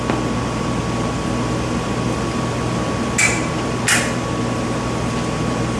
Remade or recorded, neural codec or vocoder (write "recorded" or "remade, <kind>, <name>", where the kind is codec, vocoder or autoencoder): recorded